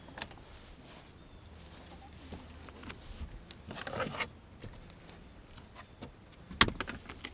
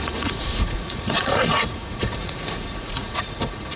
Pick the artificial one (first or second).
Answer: second